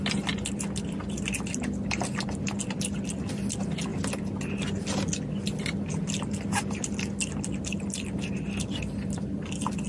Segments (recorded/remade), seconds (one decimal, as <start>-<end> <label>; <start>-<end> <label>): 0.0-9.9 recorded